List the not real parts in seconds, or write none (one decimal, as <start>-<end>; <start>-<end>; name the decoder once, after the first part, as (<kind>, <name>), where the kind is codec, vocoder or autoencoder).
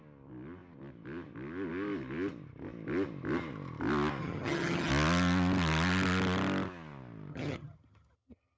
4.2-4.9 (vocoder, HiFi-GAN); 7.3-8.6